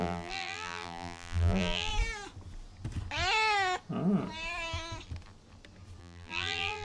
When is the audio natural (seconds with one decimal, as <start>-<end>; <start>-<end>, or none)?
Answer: 1.9-6.0